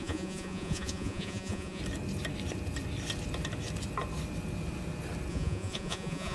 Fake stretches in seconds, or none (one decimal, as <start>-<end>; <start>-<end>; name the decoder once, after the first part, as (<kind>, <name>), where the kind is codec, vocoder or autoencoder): 0.0-1.8 (vocoder, Vocos); 5.3-6.3